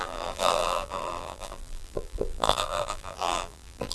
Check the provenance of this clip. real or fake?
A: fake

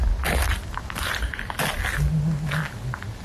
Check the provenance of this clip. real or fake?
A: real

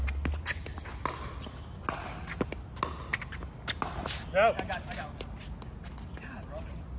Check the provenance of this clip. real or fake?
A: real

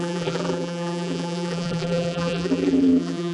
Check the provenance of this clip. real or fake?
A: fake